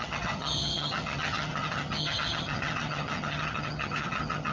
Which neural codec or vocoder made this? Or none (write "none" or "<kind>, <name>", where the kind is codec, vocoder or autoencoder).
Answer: vocoder, HiFi-GAN